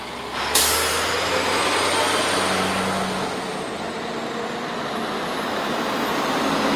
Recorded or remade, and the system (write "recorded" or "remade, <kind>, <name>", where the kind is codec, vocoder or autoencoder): recorded